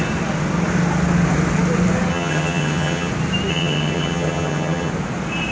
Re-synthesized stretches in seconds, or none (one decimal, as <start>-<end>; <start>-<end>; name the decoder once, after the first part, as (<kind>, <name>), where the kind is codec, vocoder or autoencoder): 2.1-3.1 (vocoder, HiFi-GAN); 3.5-4.9